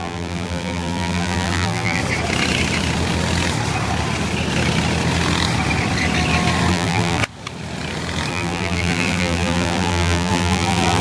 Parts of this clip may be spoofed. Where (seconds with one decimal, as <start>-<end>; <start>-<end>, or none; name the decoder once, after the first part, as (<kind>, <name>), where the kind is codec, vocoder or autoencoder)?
0.0-2.0 (vocoder, BigVGAN v2); 6.7-7.2; 8.3-11.0